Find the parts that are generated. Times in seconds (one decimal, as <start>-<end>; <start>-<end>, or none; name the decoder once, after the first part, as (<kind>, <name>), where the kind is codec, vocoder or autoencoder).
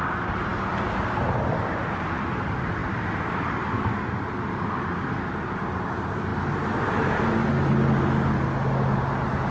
none